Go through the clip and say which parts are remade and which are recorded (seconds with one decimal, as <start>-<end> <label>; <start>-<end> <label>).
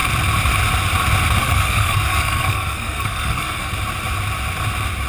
0.0-1.4 recorded; 1.4-3.7 remade; 3.7-5.1 recorded